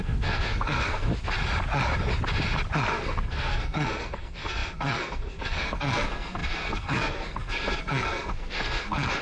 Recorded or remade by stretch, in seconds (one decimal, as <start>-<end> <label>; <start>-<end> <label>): 0.0-1.1 remade; 1.1-2.9 recorded; 2.9-9.2 remade